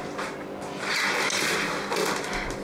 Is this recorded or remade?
recorded